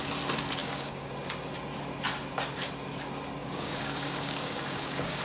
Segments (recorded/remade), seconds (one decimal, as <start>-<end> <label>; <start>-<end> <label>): 0.0-0.6 recorded; 0.6-1.1 remade; 1.1-3.4 recorded; 3.4-5.2 remade